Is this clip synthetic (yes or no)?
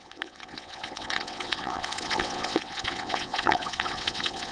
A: yes